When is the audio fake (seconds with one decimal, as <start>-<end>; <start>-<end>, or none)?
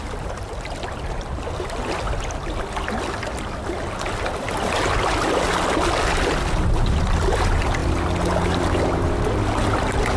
none